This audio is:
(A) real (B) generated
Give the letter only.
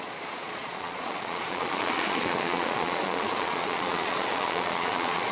B